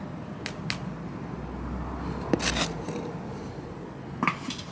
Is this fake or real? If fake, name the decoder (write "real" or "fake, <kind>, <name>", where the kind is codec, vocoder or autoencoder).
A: real